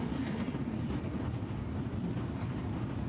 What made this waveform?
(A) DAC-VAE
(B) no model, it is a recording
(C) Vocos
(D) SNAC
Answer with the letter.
B